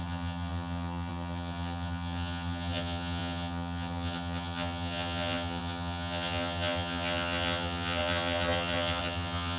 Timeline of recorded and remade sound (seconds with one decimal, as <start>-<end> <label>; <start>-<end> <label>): 0.0-9.6 remade